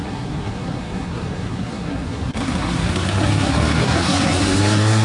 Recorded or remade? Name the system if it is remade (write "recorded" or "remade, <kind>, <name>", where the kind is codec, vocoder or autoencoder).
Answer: remade, codec, SNAC